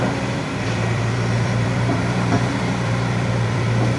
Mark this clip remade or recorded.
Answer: remade